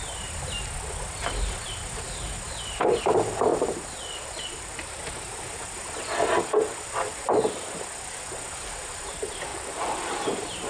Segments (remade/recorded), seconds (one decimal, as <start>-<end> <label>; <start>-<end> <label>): 0.0-3.5 recorded; 3.5-5.0 remade; 5.0-7.1 recorded; 7.1-7.9 remade; 7.9-9.5 recorded; 9.5-10.0 remade; 10.0-10.7 recorded